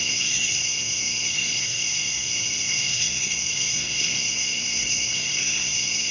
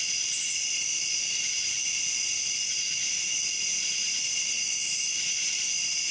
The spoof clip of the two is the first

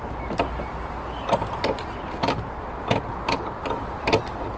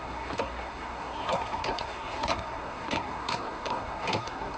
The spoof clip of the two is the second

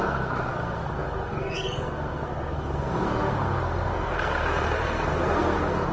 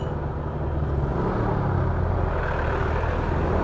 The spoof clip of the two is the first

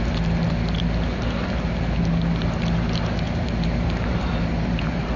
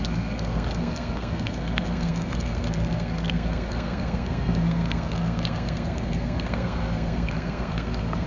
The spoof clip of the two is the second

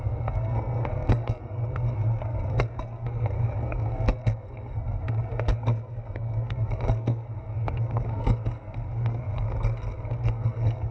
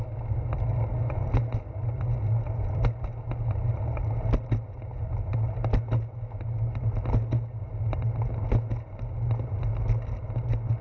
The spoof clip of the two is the first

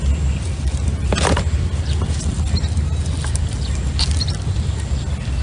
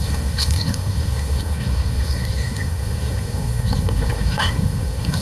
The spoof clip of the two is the second